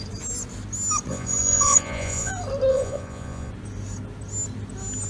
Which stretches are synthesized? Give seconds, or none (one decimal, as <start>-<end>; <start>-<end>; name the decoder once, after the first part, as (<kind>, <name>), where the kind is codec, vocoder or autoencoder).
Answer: 1.1-2.3 (vocoder, Vocos); 2.7-3.5